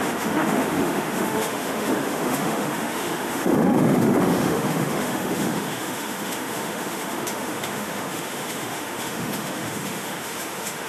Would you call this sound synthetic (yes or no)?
yes